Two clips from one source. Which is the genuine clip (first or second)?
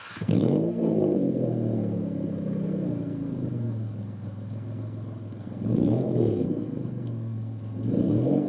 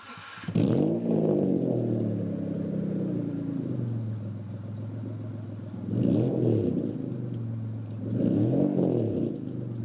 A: second